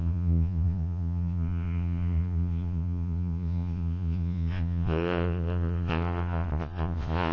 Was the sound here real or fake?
fake